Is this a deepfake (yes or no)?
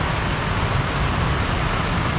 no